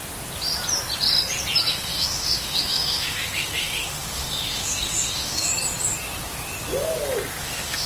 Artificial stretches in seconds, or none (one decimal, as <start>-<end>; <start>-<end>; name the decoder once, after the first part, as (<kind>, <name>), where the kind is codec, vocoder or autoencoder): 1.7-5.5 (autoencoder, DAC-VAE); 7.4-7.9